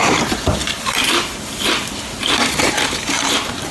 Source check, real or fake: fake